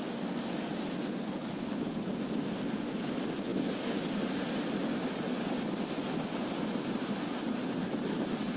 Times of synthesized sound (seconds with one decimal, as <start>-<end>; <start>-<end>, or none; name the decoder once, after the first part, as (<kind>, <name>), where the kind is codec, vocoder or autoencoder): 1.2-2.1 (codec, HILCodec)